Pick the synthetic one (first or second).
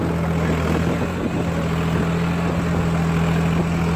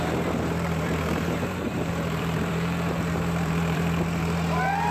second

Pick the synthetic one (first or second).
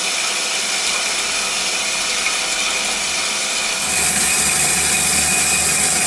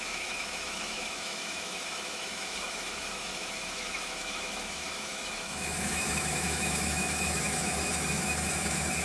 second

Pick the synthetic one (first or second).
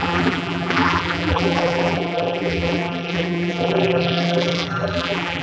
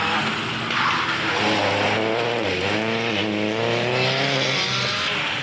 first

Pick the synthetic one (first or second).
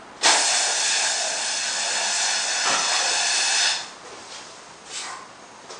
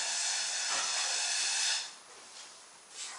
second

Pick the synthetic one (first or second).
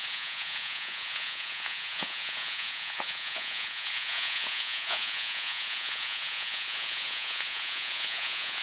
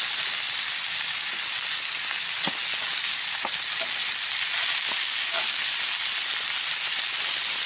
first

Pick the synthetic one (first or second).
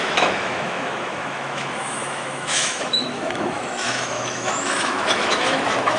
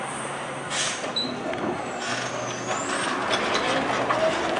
first